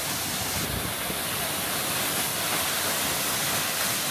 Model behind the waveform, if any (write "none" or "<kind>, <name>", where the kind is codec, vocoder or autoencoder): none